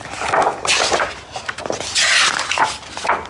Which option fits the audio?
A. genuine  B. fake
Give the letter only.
A